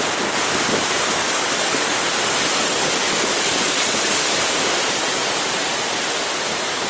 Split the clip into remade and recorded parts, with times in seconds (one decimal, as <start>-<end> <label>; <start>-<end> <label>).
0.0-1.2 recorded; 1.2-2.0 remade; 2.0-3.0 recorded; 3.0-4.4 remade; 4.4-6.9 recorded